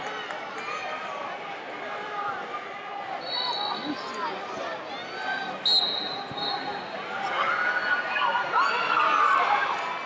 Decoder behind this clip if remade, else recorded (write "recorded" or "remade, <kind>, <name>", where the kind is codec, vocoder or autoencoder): recorded